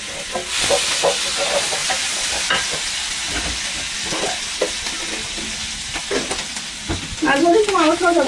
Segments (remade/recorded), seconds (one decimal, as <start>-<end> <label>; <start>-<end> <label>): 0.0-1.8 recorded; 1.8-5.0 remade; 5.0-8.3 recorded